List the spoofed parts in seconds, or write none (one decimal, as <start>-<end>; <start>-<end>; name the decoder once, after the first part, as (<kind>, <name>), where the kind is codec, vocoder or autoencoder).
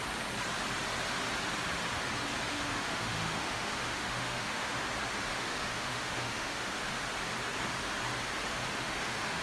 2.5-4.8 (autoencoder, DAC-VAE); 5.3-7.0; 8.5-9.4